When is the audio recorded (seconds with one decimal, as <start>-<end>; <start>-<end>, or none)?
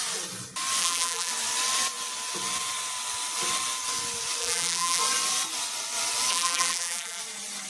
0.0-0.8; 1.3-4.4; 5.0-6.3; 7.2-7.7